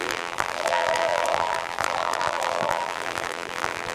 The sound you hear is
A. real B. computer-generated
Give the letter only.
B